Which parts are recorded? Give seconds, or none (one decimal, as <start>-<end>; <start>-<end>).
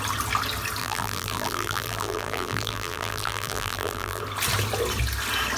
0.0-0.8; 4.2-5.6